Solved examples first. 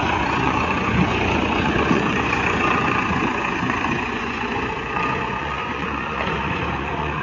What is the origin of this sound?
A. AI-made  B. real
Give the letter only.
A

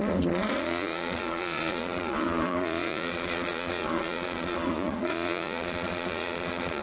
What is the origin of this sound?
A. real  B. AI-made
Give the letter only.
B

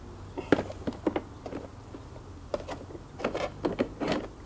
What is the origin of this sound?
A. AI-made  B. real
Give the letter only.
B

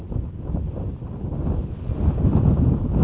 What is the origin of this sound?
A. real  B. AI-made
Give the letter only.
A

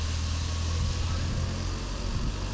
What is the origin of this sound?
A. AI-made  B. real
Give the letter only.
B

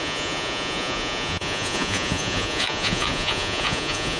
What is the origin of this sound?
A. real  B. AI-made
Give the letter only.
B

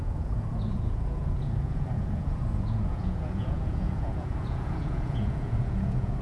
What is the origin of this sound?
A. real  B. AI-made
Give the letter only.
B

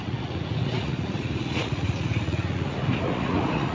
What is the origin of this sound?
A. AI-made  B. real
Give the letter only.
A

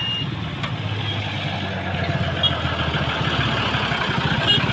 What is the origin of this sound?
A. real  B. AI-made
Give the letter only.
A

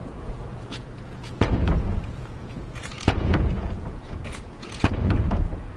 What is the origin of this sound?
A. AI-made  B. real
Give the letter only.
A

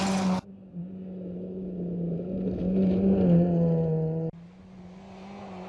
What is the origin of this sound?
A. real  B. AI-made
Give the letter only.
A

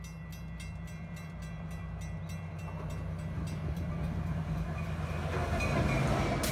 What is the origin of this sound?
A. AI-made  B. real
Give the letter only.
B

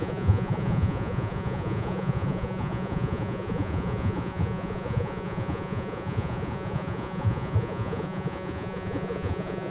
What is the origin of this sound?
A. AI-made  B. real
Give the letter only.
A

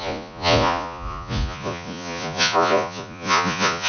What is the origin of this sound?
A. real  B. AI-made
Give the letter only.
B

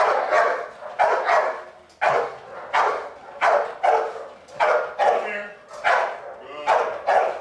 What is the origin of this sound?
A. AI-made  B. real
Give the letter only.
B